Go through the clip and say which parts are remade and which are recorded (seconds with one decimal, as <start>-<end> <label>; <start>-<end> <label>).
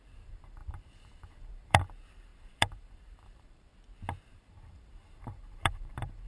0.0-3.7 remade; 3.7-4.2 recorded; 4.2-6.3 remade